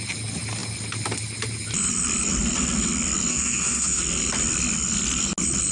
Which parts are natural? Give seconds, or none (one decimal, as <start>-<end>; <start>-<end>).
0.0-3.3; 4.0-5.7